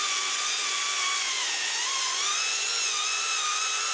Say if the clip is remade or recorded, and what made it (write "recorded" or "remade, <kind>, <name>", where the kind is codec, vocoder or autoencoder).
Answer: remade, vocoder, Vocos